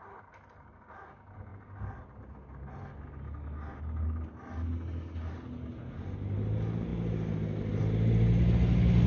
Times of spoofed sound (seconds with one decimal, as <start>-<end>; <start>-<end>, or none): none